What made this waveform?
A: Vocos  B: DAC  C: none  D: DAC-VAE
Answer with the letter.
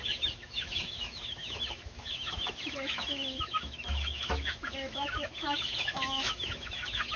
D